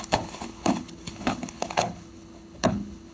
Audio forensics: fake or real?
fake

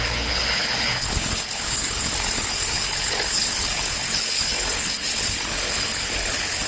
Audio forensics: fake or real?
fake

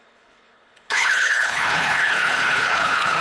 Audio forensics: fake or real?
fake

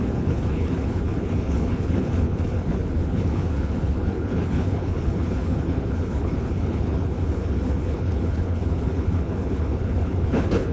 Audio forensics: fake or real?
fake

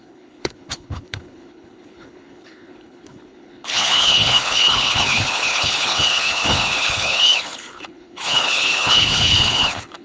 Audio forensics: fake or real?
fake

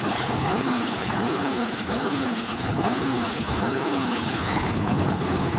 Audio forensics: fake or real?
fake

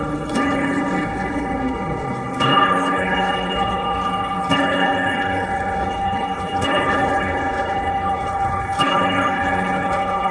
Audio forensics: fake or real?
fake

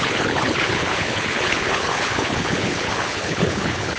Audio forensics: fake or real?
fake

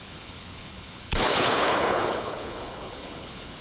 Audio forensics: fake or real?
fake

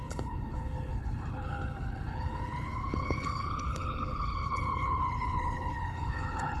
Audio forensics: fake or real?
fake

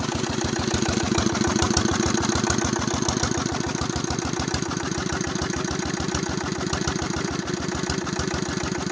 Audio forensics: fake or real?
real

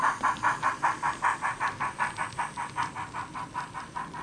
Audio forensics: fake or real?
real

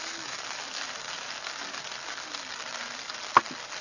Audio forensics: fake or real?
real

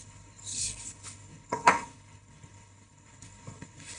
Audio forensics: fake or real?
fake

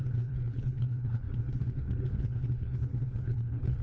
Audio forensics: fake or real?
fake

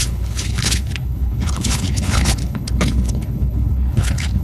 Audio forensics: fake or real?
fake